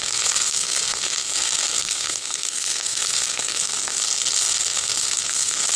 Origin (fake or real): fake